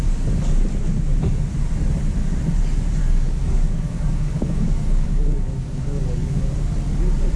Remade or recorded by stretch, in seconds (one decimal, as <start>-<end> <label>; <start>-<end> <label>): 0.0-3.0 recorded; 3.0-6.4 remade; 6.4-7.4 recorded